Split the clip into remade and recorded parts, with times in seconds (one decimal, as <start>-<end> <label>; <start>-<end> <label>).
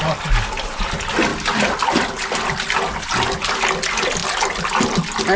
0.0-5.4 recorded